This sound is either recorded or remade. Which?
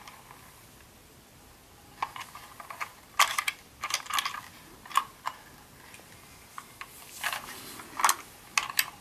recorded